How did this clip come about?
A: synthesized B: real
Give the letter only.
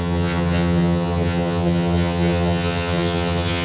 A